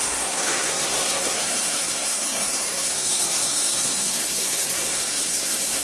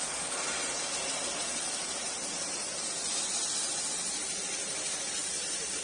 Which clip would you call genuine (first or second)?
second